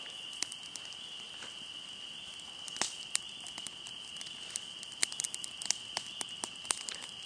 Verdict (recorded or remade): recorded